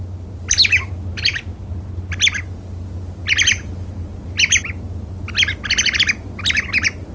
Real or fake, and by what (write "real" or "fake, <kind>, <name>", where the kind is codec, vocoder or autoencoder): real